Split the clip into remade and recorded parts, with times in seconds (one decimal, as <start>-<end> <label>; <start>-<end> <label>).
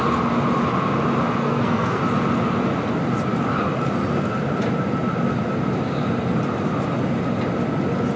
0.0-1.4 recorded; 1.4-2.0 remade; 2.0-8.2 recorded